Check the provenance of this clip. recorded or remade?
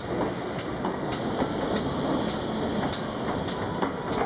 recorded